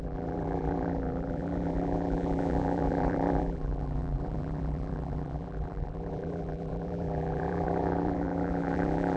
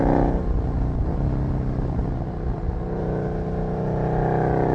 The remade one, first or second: first